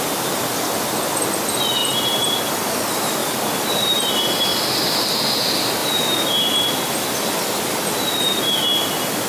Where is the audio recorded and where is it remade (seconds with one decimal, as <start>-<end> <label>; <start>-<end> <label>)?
0.0-1.8 recorded; 1.8-2.4 remade; 2.4-3.2 recorded; 3.2-4.1 remade; 4.1-5.8 recorded; 5.8-6.5 remade; 6.5-9.3 recorded